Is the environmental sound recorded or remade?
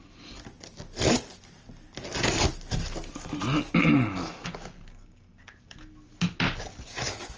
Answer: recorded